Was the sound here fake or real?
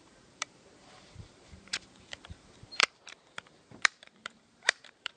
fake